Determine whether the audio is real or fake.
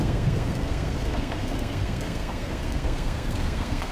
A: fake